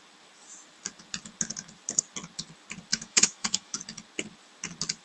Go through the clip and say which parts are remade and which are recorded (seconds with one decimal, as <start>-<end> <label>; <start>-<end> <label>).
0.0-2.9 recorded; 2.9-3.8 remade; 3.8-5.0 recorded